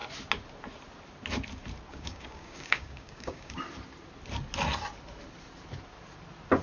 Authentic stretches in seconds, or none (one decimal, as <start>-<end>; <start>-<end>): 0.0-1.9; 3.6-6.6